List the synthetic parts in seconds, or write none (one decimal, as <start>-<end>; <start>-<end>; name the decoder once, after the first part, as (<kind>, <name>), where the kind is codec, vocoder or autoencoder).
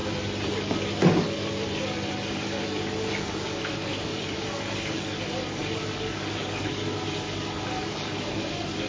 2.3-8.9 (codec, DAC)